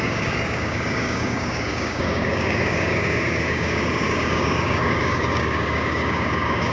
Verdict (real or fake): fake